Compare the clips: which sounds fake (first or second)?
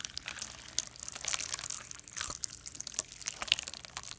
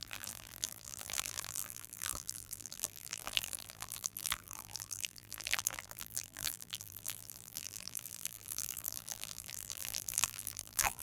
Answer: second